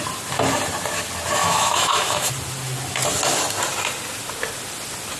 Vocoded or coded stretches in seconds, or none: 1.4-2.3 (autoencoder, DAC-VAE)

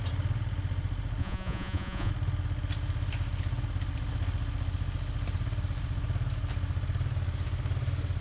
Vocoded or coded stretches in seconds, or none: 1.2-2.1 (vocoder, Vocos)

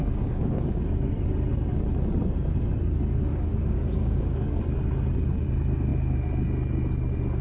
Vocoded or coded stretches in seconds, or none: 0.0-0.8 (codec, DAC); 3.3-4.6

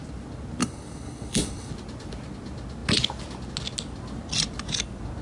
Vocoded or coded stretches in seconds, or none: 0.6-1.7 (codec, HILCodec)

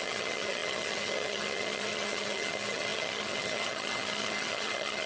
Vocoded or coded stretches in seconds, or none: 0.0-5.1 (vocoder, HiFi-GAN)

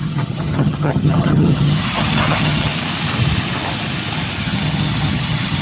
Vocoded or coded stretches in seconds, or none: 0.0-2.7 (vocoder, HiFi-GAN); 4.4-5.6